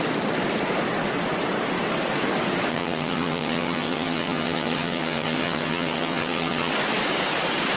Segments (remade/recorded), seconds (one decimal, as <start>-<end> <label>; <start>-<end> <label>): 0.0-2.7 recorded; 2.7-6.7 remade; 6.7-7.8 recorded